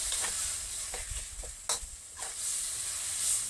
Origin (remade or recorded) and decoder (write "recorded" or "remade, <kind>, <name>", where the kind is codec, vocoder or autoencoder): recorded